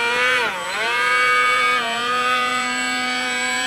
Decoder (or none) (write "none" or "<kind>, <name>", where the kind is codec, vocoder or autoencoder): vocoder, Vocos